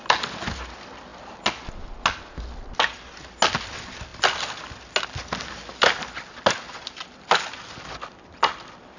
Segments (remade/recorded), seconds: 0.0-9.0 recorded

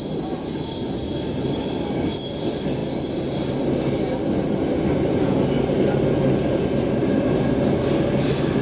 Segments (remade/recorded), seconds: 0.0-8.6 recorded

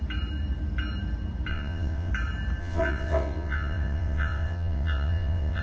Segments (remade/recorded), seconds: 0.0-1.5 recorded; 1.5-2.1 remade; 2.1-2.6 recorded; 2.6-5.6 remade

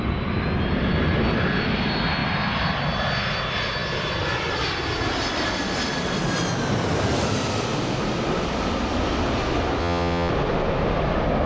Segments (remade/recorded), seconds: 0.0-9.8 recorded; 9.8-10.3 remade; 10.3-11.5 recorded

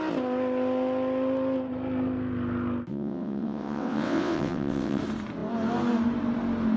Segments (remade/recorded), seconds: 0.0-2.9 recorded; 2.9-5.0 remade; 5.0-6.8 recorded

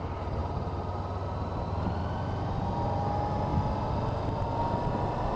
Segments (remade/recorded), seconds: 0.0-5.4 recorded

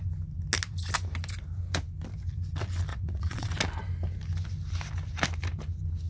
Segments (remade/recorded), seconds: 0.0-2.9 recorded; 2.9-3.5 remade; 3.5-6.1 recorded

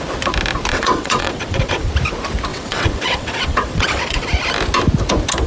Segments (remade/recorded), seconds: 0.0-0.7 recorded; 0.7-1.9 remade; 1.9-2.5 recorded; 2.5-4.3 remade; 4.3-5.5 recorded